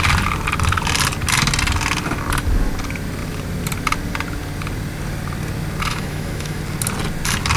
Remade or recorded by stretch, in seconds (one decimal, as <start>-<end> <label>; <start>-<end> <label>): 0.0-5.9 recorded; 5.9-6.6 remade; 6.6-7.6 recorded